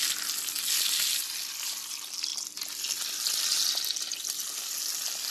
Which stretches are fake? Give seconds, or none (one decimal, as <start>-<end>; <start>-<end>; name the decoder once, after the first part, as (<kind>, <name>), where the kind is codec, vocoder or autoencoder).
none